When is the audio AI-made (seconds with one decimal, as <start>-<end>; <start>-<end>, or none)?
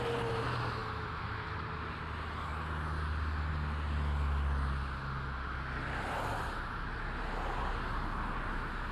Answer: 0.8-1.8